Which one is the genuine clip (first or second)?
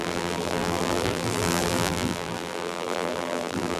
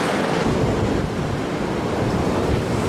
second